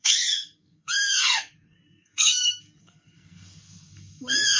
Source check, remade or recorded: remade